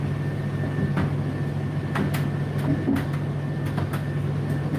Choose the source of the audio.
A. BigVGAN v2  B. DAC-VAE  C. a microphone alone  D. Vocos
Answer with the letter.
C